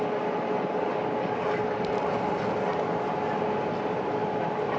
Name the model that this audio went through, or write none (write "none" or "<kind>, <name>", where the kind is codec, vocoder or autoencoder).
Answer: none